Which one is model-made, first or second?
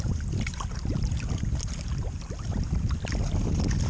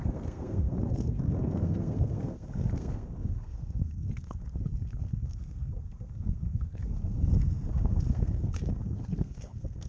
second